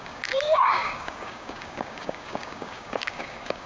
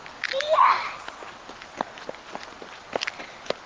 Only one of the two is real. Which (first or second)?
second